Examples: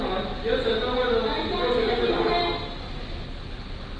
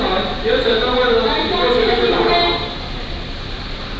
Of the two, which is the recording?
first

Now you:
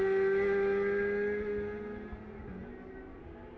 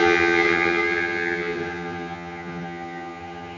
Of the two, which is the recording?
first